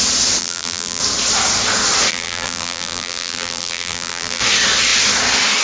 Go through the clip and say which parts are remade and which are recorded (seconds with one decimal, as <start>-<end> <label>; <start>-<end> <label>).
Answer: 0.0-0.4 recorded; 0.4-1.0 remade; 1.0-2.1 recorded; 2.1-4.4 remade; 4.4-5.6 recorded